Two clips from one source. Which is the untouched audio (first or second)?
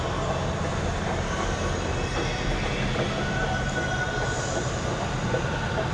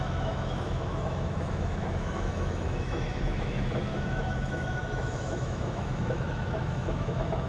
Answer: first